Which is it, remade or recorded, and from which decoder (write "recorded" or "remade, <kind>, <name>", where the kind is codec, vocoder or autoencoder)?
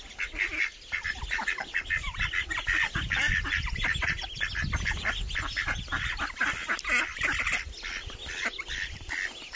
recorded